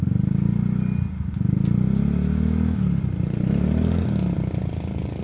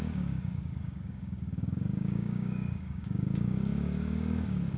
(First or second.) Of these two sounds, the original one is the first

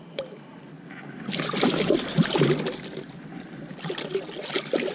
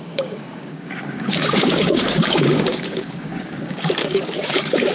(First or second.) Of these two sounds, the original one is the first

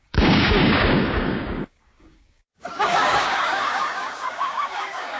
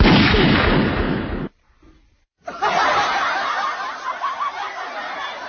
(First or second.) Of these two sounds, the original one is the second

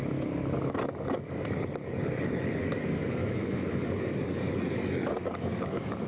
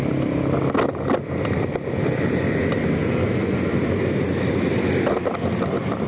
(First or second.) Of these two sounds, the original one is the second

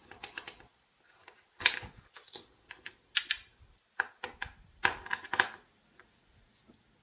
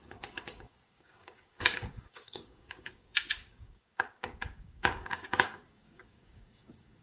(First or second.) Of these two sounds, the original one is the first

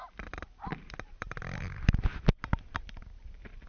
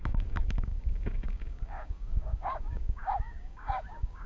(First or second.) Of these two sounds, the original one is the first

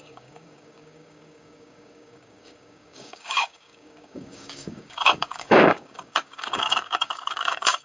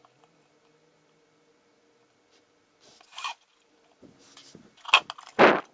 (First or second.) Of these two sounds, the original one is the second